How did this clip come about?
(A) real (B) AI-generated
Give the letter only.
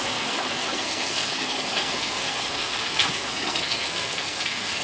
B